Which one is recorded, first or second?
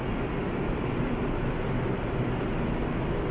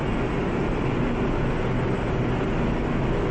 second